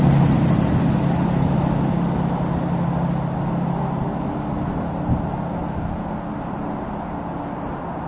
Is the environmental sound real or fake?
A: real